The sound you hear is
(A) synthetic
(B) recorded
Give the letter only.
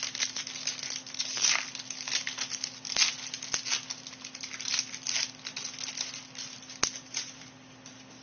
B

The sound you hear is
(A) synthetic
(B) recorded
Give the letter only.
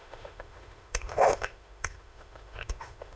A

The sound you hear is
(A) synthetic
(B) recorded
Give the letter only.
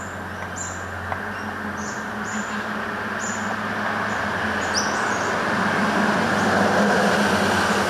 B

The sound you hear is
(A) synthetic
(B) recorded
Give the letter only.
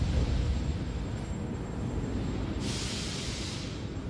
B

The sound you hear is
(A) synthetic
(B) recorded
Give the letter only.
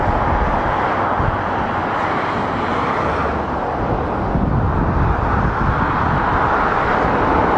B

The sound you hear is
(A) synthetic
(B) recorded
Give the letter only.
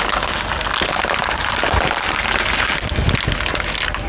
B